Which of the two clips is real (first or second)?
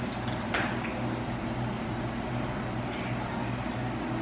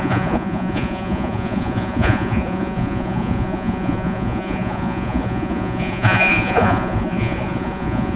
first